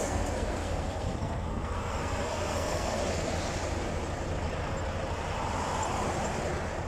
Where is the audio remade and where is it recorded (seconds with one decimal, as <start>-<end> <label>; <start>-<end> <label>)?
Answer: 0.0-3.0 remade; 3.0-6.9 recorded